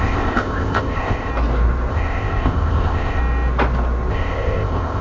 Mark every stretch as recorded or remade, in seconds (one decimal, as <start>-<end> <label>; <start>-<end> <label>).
0.0-1.3 remade; 1.3-1.9 recorded; 1.9-3.2 remade; 3.2-4.1 recorded; 4.1-5.0 remade